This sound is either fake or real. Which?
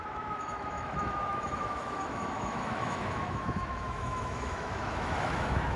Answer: fake